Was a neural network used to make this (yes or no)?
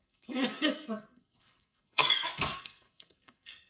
yes